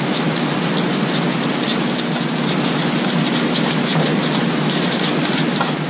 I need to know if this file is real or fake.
real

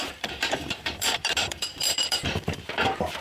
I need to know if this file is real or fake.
fake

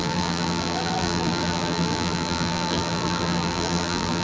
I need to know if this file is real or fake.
fake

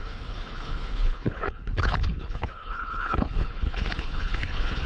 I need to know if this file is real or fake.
fake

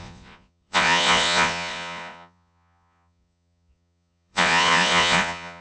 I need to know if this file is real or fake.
fake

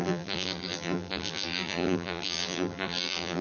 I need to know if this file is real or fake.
fake